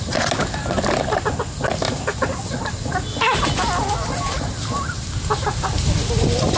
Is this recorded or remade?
recorded